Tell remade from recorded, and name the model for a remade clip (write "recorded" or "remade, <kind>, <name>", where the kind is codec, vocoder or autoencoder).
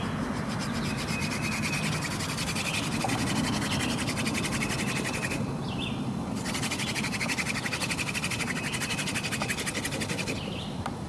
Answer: recorded